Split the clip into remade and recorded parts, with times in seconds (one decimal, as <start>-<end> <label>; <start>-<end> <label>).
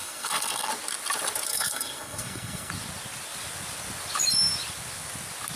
0.0-0.7 remade; 0.7-1.5 recorded; 1.5-2.7 remade; 2.7-5.6 recorded